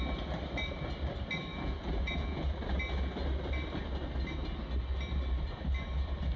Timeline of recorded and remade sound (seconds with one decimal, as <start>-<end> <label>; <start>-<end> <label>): 0.0-1.5 recorded; 1.5-2.5 remade; 2.5-6.4 recorded